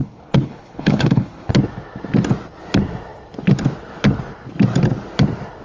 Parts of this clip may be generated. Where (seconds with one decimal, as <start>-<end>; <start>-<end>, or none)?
0.0-1.5